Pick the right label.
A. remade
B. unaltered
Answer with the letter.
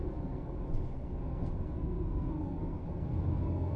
A